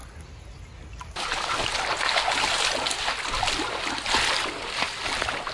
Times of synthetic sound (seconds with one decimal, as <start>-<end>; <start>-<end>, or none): none